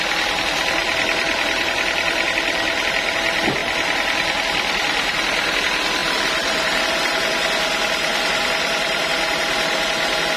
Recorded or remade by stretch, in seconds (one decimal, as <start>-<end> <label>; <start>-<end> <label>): 0.0-0.8 recorded; 0.8-2.9 remade; 2.9-3.6 recorded; 3.6-5.6 remade; 5.6-6.0 recorded; 6.0-6.8 remade; 6.8-8.1 recorded; 8.1-9.1 remade; 9.1-10.4 recorded